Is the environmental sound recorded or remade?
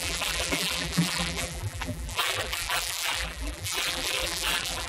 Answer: remade